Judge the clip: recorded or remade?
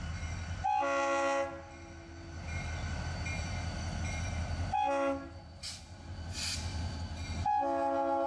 recorded